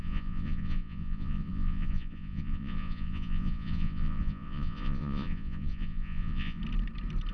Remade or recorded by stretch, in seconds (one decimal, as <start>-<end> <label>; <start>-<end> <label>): 0.0-6.6 remade; 6.6-7.3 recorded